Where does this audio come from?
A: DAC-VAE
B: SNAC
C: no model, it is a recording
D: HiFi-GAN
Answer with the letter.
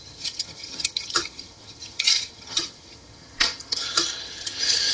D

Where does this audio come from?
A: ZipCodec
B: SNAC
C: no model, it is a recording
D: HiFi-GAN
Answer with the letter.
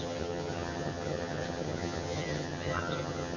D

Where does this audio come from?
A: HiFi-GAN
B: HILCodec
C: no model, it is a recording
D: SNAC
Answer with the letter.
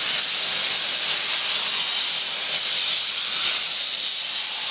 C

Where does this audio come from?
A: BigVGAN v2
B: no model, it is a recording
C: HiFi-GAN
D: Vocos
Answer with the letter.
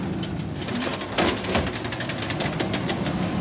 B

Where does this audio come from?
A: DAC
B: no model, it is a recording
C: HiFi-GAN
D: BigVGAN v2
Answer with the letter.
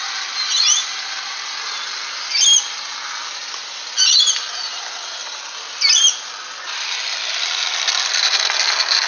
B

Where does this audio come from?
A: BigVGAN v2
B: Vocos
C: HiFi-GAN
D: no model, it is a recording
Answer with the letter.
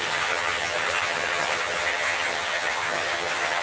C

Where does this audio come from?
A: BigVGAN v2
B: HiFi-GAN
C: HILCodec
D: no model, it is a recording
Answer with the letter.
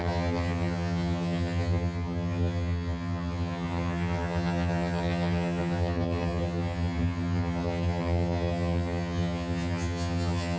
B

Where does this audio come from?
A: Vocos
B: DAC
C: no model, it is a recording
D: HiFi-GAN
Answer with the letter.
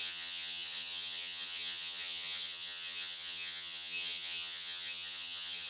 D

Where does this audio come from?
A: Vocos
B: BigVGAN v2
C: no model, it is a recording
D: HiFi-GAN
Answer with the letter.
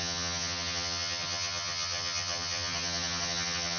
D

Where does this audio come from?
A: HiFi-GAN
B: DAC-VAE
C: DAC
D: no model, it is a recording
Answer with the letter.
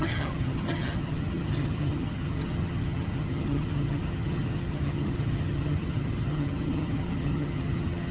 A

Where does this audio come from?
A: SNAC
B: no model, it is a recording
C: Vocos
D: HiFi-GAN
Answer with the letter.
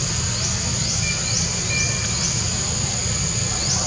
B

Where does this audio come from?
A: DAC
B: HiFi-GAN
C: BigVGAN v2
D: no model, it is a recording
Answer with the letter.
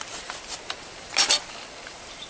D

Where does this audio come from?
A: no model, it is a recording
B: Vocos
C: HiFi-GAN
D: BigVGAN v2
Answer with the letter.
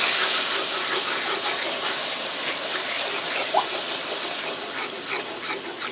A